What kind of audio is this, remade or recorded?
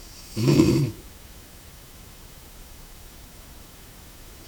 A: remade